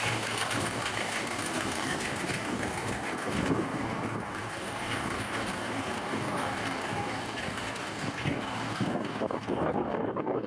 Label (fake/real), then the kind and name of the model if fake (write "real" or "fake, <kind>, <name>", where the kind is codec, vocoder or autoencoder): fake, codec, DAC